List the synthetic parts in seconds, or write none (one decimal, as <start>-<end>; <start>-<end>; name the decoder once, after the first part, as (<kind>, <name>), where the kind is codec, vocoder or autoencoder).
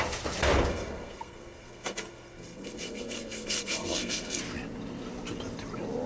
0.7-4.4 (codec, SNAC)